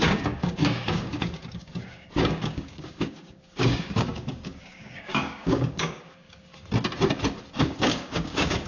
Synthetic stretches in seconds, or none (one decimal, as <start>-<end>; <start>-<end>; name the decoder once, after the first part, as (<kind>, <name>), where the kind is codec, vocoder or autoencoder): 0.0-6.5 (codec, DAC); 7.6-8.7